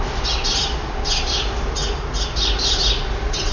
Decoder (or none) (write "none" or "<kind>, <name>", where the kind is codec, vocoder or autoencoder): none